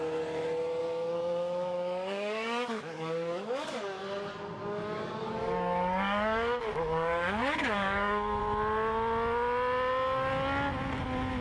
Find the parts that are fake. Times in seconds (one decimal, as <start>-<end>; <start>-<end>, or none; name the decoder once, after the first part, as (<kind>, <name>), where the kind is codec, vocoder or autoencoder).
0.8-4.0 (codec, DAC); 4.6-8.4